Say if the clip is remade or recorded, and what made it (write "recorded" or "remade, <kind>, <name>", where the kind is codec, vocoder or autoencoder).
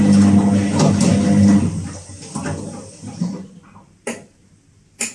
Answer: recorded